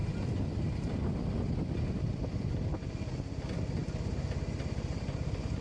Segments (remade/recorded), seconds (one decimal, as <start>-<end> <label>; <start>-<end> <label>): 0.0-5.6 recorded